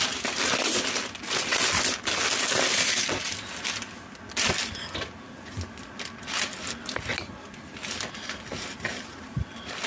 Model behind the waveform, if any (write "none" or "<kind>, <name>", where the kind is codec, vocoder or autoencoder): none